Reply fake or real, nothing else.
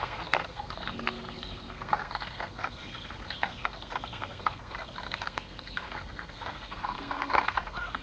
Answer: fake